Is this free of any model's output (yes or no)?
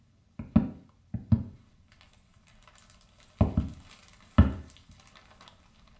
yes